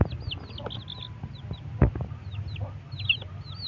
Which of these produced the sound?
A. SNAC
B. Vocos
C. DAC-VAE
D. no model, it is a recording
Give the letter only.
D